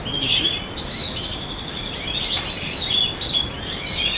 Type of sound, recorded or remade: recorded